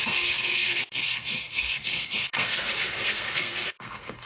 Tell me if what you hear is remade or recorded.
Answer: remade